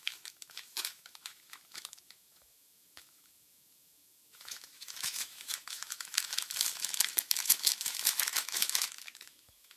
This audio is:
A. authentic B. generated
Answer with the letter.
B